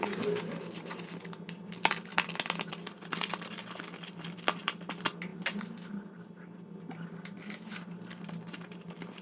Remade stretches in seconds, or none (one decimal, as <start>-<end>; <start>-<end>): none

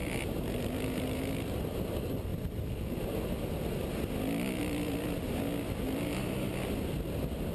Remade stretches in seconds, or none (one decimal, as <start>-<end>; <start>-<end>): 0.0-1.2

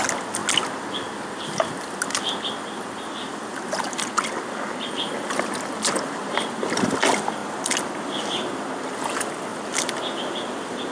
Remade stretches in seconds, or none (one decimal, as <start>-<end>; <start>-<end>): none

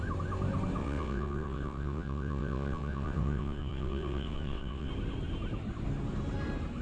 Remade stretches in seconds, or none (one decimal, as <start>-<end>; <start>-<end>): 0.8-4.9

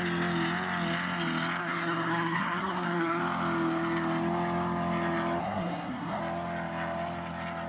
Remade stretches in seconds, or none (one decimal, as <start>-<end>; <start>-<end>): 1.6-3.2; 5.4-6.2

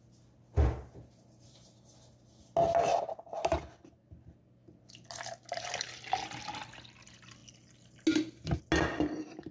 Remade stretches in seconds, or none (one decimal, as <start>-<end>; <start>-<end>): none

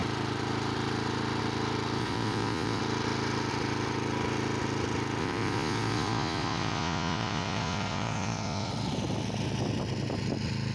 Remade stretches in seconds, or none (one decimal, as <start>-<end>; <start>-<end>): 2.0-2.8; 5.2-8.7